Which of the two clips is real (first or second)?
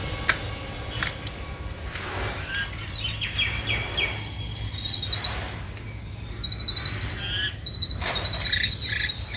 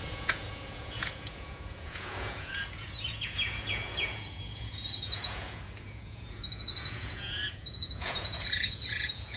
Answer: first